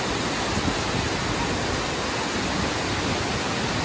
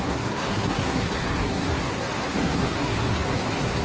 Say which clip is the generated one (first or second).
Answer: second